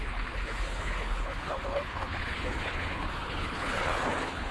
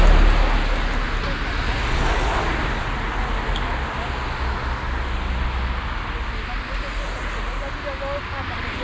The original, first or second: second